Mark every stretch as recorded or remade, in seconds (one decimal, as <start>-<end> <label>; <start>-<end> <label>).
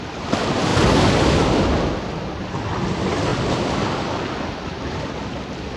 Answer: 0.0-5.8 recorded